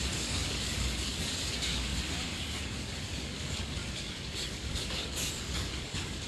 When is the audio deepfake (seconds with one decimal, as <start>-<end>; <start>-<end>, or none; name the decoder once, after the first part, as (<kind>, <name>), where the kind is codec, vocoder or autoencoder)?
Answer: 0.0-1.9 (codec, DAC); 2.4-6.3